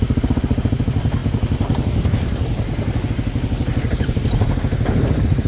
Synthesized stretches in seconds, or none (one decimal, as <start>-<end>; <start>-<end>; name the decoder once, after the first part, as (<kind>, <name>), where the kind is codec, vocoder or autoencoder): 3.7-4.6 (vocoder, BigVGAN v2)